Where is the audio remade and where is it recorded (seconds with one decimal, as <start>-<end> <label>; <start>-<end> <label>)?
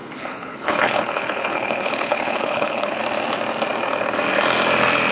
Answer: 0.0-3.0 remade; 3.0-5.1 recorded